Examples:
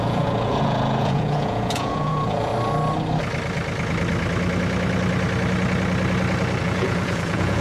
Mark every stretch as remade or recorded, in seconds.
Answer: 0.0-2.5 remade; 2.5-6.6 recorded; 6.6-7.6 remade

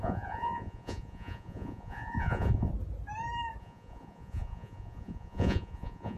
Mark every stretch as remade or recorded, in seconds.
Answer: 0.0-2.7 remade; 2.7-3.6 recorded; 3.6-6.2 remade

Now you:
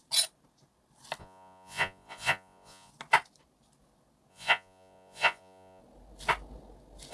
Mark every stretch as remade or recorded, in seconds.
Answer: 0.0-1.2 recorded; 1.2-2.9 remade; 2.9-4.3 recorded; 4.3-5.8 remade; 5.8-7.1 recorded

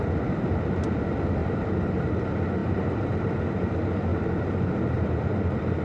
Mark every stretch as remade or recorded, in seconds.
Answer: 0.0-1.4 recorded; 1.4-2.2 remade; 2.2-2.6 recorded; 2.6-3.6 remade; 3.6-4.1 recorded; 4.1-5.8 remade

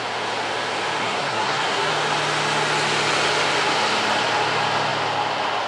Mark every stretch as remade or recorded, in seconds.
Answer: 0.0-1.0 recorded; 1.0-1.9 remade; 1.9-5.7 recorded